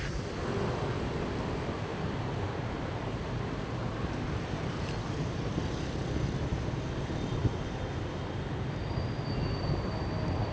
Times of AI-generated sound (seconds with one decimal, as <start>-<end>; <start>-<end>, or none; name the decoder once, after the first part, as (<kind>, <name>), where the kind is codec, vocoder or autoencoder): 1.9-5.6 (vocoder, BigVGAN v2)